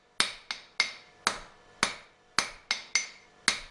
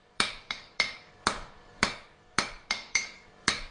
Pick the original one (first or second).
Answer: first